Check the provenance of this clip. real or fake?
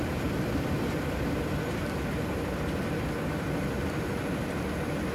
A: real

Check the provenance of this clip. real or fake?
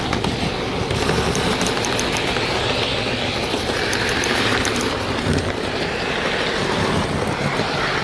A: real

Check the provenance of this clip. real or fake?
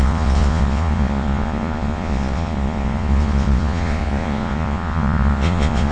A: fake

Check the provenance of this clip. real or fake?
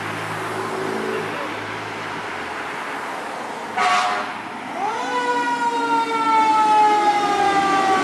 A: real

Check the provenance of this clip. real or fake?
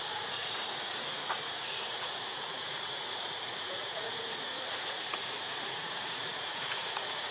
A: fake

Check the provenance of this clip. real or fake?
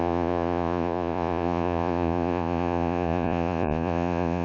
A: fake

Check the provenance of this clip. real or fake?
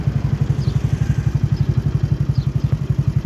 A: real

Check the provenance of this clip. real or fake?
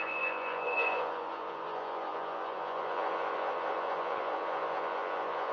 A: fake